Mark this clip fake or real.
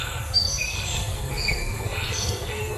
fake